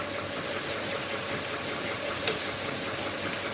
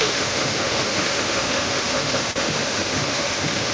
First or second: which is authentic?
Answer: first